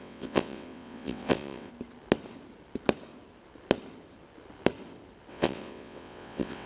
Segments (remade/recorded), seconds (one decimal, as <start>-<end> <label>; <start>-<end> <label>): 0.0-1.7 remade; 1.7-5.3 recorded; 5.3-6.7 remade